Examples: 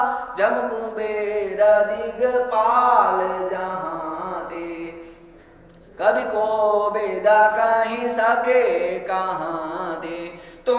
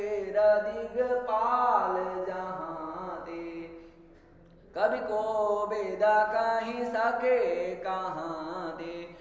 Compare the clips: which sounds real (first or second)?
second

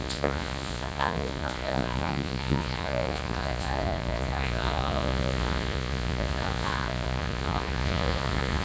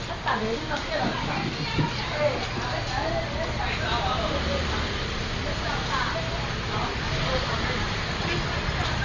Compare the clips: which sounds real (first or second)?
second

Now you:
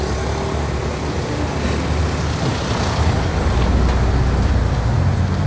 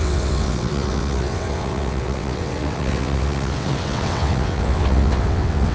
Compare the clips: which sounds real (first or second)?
first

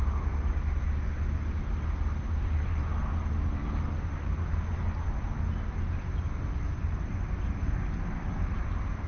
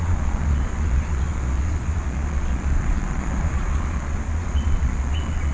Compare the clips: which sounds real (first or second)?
first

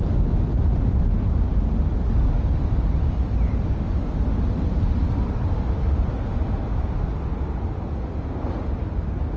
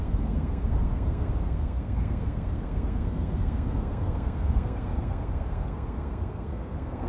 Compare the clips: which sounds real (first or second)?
first